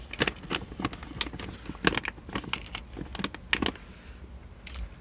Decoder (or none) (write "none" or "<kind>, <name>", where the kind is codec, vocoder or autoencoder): none